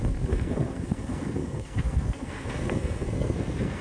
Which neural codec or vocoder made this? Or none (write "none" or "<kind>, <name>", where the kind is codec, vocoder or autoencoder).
codec, SNAC